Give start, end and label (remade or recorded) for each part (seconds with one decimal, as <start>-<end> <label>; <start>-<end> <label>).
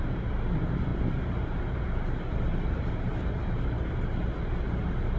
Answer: 0.0-5.2 recorded